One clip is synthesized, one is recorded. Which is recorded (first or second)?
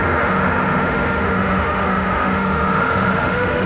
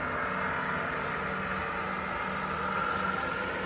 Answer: second